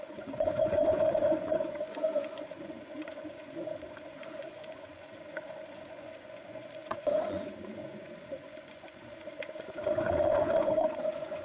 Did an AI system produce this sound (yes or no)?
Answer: yes